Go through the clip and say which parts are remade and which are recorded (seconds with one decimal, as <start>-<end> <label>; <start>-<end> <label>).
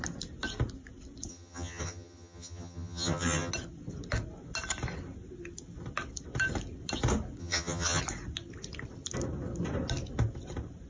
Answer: 0.0-1.3 recorded; 1.3-3.5 remade; 3.5-7.4 recorded; 7.4-8.0 remade; 8.0-10.9 recorded